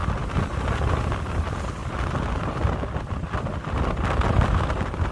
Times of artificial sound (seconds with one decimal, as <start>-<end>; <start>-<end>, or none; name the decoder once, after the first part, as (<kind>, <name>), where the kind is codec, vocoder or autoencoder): none